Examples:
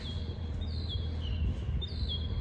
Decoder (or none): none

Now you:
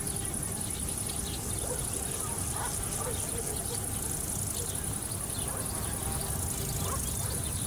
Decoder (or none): none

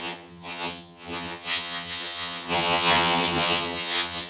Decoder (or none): vocoder, HiFi-GAN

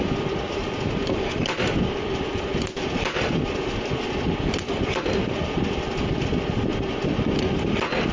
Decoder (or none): none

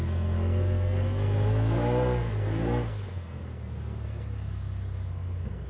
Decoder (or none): codec, SNAC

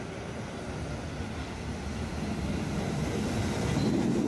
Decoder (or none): none